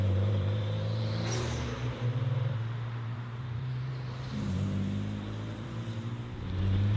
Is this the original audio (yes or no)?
no